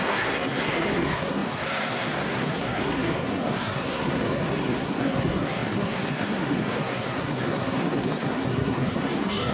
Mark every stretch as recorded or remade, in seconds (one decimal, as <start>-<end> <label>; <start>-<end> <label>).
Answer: 0.0-9.5 remade